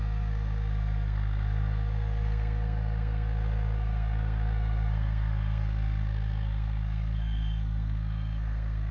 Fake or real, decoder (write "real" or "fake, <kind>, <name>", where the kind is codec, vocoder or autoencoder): fake, codec, SNAC